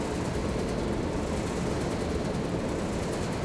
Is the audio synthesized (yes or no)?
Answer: no